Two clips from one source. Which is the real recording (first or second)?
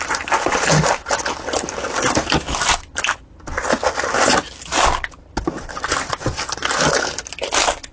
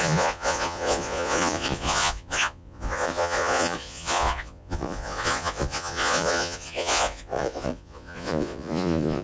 first